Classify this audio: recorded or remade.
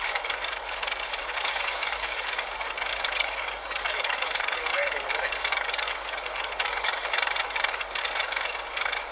remade